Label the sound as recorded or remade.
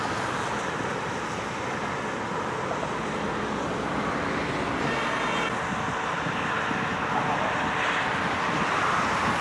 recorded